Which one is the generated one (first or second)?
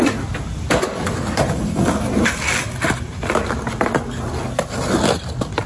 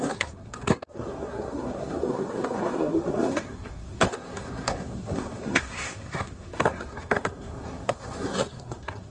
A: second